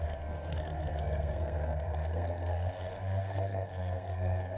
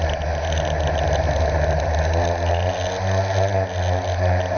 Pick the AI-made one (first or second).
first